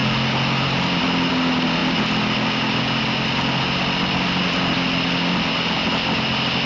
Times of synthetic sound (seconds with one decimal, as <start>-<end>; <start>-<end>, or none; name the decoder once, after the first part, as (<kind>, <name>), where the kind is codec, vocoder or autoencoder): none